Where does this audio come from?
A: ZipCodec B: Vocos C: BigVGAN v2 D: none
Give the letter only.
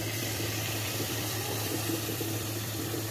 C